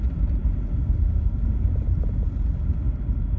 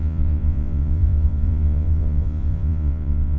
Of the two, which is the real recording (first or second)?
first